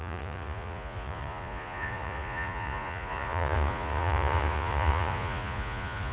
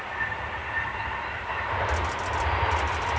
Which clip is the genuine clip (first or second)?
second